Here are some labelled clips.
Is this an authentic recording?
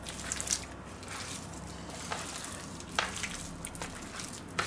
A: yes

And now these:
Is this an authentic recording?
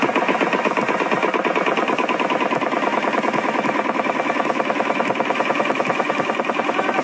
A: yes